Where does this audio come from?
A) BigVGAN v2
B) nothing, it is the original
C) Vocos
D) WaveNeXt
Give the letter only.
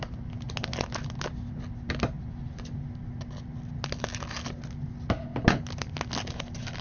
B